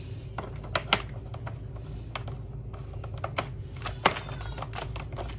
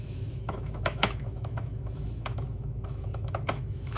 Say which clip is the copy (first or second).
second